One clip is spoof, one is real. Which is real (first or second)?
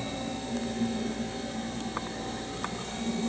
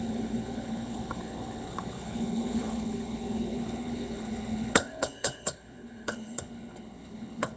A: first